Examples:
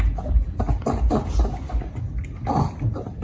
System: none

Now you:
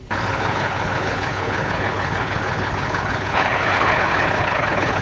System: codec, HILCodec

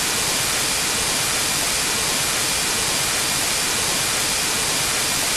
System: none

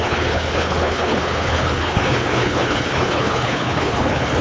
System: codec, HILCodec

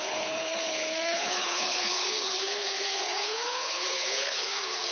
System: codec, HILCodec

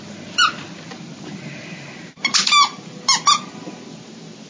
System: none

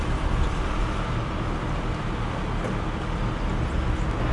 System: none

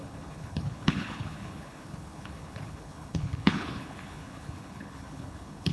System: codec, HILCodec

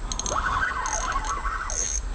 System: none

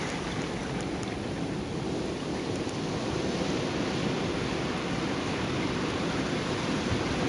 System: none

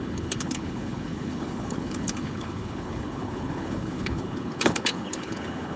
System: codec, HILCodec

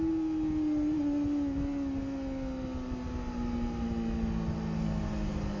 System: none